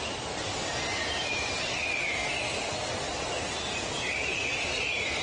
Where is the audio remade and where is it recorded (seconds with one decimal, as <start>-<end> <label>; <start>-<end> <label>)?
0.0-5.2 recorded